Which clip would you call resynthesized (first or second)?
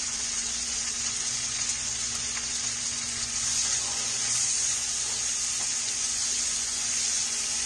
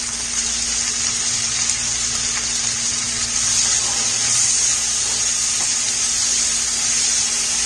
first